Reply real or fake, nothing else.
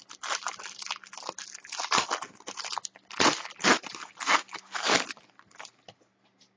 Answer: real